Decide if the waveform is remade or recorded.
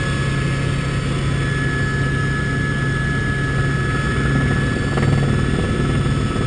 recorded